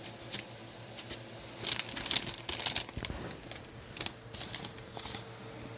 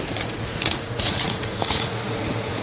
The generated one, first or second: second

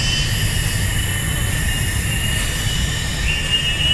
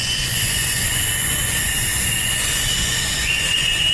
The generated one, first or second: second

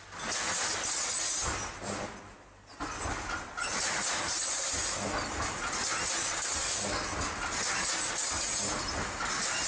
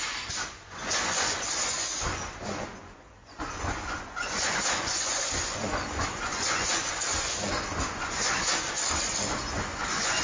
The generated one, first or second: second